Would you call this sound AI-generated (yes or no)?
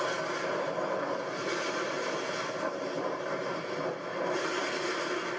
no